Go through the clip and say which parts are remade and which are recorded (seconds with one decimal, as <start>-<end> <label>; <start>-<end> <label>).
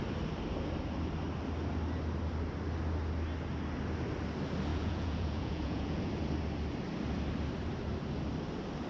0.0-4.7 recorded; 4.7-6.1 remade; 6.1-8.9 recorded